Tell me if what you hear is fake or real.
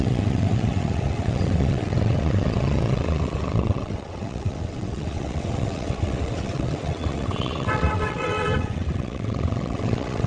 fake